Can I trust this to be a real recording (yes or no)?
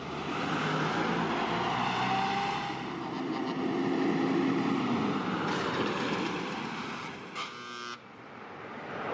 no